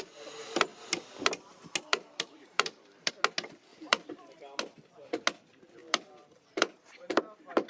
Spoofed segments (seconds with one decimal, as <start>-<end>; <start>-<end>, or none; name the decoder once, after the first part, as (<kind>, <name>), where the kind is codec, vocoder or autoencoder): 1.9-3.1 (vocoder, BigVGAN v2); 3.7-4.6; 5.8-7.2